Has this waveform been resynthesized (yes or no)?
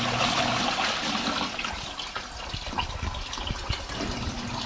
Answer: yes